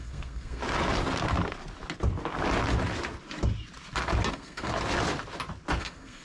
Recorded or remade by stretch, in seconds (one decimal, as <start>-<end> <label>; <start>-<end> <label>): 0.0-0.6 remade; 0.6-4.3 recorded; 4.3-4.7 remade; 4.7-5.8 recorded; 5.8-6.2 remade